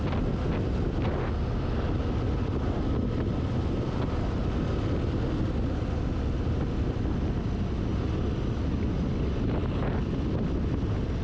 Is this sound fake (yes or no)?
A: no